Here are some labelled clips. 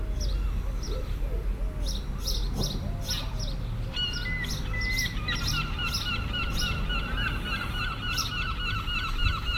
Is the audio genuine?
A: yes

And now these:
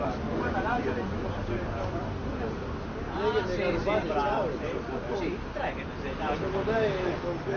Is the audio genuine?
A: yes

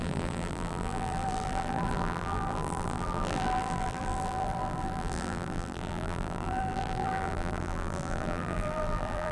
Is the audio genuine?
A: no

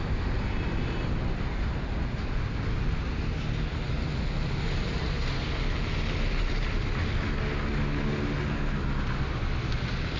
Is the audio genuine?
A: yes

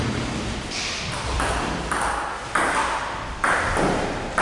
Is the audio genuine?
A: no